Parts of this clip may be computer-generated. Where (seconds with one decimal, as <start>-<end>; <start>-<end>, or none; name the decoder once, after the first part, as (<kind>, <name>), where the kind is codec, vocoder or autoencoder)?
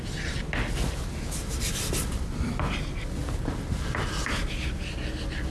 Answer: 3.2-4.2 (vocoder, BigVGAN v2)